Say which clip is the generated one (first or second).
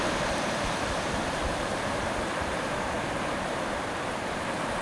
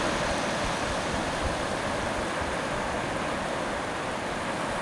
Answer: first